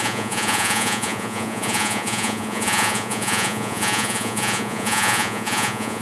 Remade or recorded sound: remade